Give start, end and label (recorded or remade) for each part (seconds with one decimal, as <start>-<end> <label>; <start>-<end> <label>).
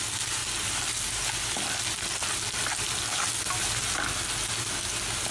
0.0-5.3 recorded